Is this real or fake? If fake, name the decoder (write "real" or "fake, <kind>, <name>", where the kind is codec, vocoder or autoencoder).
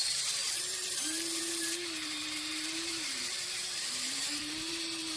fake, vocoder, BigVGAN v2